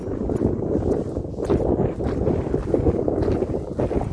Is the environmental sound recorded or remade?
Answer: recorded